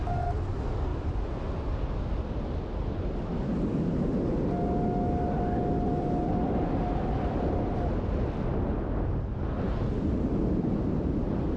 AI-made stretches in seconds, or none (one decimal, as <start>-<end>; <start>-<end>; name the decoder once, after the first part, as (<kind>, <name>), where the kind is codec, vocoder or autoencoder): none